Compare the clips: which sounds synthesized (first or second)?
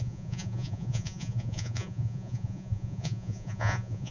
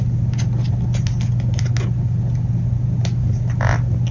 first